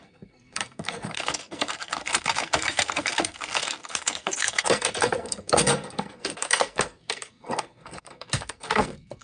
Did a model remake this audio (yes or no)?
yes